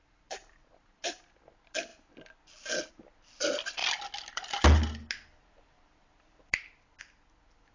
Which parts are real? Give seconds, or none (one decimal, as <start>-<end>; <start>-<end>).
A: 0.0-0.4; 1.2-7.7